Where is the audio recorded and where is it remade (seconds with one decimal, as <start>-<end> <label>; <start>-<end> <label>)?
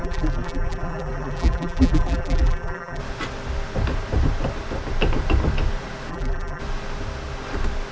0.0-3.0 remade; 3.0-6.1 recorded; 6.1-6.6 remade; 6.6-7.9 recorded